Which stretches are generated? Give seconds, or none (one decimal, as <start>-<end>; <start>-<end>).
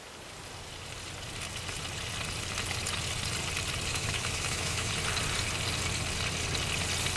3.9-4.9